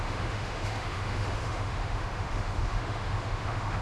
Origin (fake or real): fake